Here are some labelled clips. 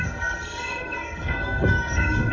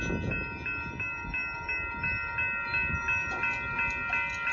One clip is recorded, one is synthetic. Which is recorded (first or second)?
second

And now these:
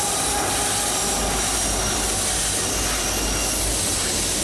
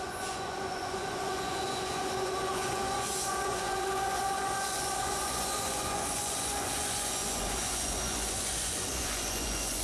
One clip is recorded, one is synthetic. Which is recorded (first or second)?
first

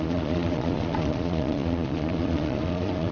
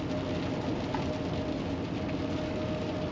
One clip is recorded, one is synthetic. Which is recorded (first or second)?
second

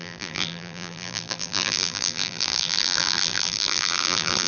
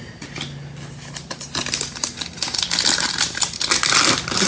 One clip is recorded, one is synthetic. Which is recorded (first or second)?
second